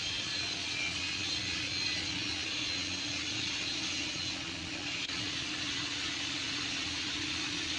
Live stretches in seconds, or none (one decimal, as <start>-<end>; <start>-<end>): none